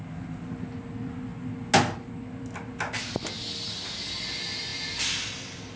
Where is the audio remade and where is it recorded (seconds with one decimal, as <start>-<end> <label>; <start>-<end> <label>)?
0.0-5.8 recorded